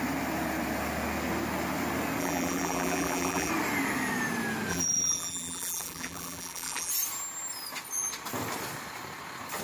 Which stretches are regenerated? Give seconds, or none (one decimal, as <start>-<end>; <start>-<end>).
2.2-3.5; 4.7-6.9